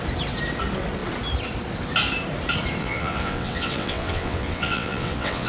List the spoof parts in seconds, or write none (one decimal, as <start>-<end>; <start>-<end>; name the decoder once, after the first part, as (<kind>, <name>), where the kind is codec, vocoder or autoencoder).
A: 2.8-5.5 (vocoder, WaveNeXt)